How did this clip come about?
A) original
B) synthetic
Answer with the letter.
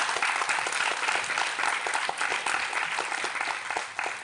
A